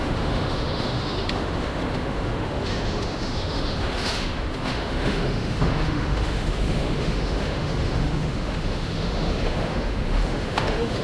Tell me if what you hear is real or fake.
fake